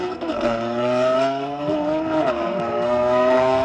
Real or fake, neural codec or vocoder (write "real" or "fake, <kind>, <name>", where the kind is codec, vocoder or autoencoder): fake, codec, SNAC